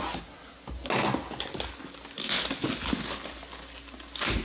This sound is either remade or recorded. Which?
recorded